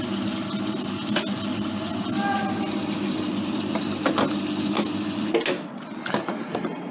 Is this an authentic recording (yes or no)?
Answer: yes